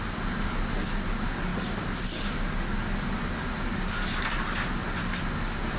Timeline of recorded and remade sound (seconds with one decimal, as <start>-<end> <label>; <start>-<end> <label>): 0.0-5.8 recorded